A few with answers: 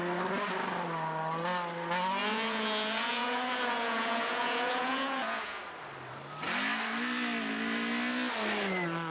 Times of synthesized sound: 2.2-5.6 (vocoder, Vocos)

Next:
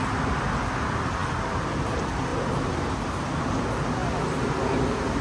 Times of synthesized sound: none

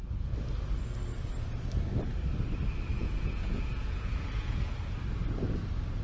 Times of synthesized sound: 2.9-4.7 (vocoder, Vocos)

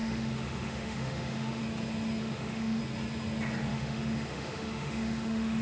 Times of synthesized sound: 0.0-1.6 (autoencoder, DAC-VAE); 2.2-2.8; 3.7-5.6